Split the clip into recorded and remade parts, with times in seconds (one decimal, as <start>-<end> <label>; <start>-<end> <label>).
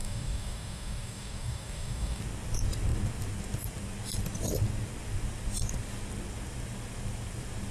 0.0-2.2 remade; 2.2-7.7 recorded